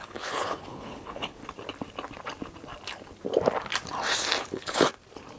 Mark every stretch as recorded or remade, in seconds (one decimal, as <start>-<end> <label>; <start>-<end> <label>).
0.0-1.4 remade; 1.4-4.4 recorded; 4.4-4.9 remade; 4.9-5.4 recorded